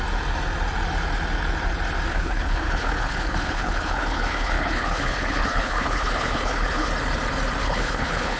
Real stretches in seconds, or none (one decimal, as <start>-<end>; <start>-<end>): 0.0-2.1; 6.9-7.6